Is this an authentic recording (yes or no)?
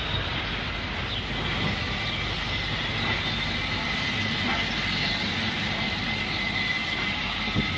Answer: yes